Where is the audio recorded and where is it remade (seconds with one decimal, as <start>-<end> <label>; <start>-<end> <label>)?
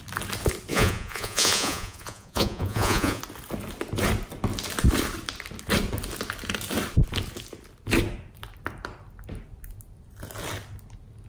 0.0-0.7 recorded; 0.7-3.2 remade; 3.2-11.3 recorded